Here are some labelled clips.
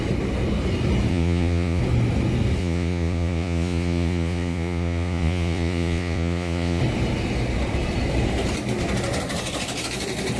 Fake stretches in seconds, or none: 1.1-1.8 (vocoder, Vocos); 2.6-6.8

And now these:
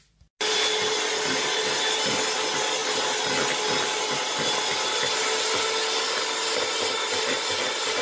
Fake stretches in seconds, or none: none

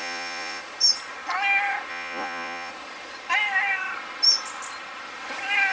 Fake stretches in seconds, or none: 0.0-0.6 (vocoder, Vocos); 1.9-2.7

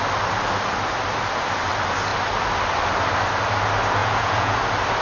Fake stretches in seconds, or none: 4.0-4.6 (vocoder, Vocos)

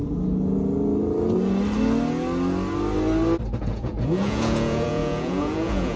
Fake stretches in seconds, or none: 3.6-6.0 (vocoder, Vocos)